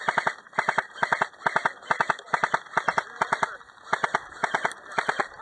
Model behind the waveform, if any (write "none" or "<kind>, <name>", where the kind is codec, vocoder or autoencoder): none